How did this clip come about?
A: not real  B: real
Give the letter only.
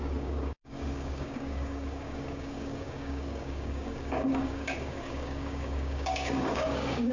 A